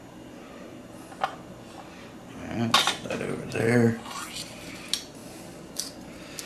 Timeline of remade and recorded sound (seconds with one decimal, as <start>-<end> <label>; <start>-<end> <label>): 0.0-6.5 recorded